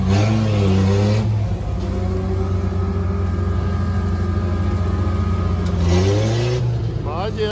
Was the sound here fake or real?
real